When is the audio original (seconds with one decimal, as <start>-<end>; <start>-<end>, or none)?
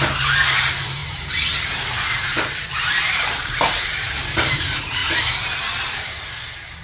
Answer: 5.0-5.9